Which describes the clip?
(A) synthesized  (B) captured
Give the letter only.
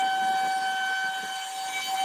B